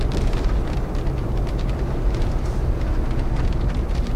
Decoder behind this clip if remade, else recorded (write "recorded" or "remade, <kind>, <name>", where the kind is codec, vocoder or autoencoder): recorded